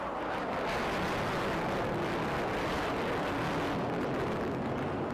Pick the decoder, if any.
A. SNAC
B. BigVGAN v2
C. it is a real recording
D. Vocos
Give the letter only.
C